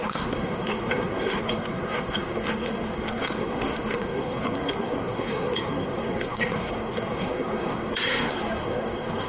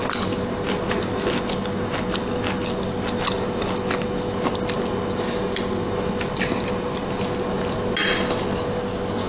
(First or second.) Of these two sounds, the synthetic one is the first